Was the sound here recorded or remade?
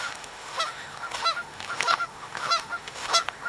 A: remade